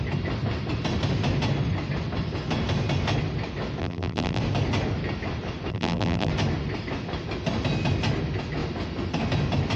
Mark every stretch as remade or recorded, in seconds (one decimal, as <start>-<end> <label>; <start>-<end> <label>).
0.0-3.8 recorded; 3.8-4.4 remade; 4.4-5.7 recorded; 5.7-6.3 remade; 6.3-9.8 recorded